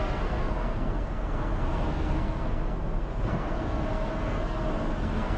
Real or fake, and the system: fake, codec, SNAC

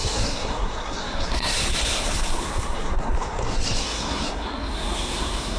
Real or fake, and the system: fake, codec, SNAC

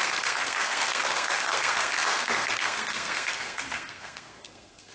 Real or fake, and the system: fake, codec, SNAC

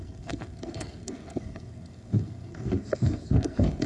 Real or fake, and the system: fake, codec, SNAC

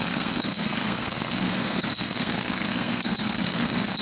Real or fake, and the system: fake, codec, SNAC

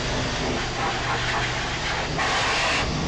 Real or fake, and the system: real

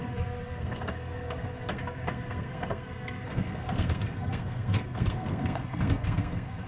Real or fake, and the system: fake, codec, SNAC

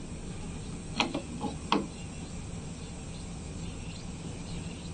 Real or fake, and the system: real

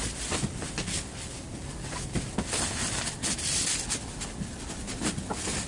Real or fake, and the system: real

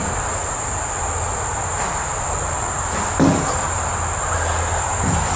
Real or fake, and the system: real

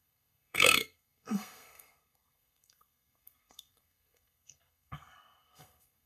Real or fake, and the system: fake, codec, SNAC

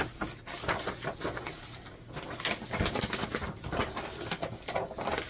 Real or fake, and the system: real